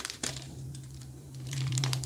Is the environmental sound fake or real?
fake